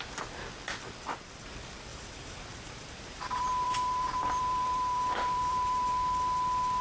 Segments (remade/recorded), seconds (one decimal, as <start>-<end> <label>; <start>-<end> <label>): 0.0-1.9 recorded; 1.9-5.9 remade; 5.9-6.8 recorded